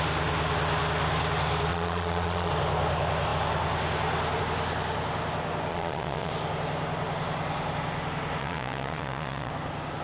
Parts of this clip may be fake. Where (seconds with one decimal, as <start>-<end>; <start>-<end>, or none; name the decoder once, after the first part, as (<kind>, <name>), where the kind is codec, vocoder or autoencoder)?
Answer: 1.7-2.5 (vocoder, Vocos); 5.7-6.3; 8.4-9.5